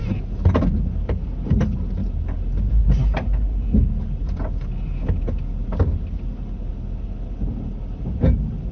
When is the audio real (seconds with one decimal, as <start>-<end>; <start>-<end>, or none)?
0.0-8.7